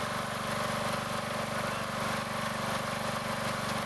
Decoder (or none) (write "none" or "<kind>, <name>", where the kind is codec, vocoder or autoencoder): none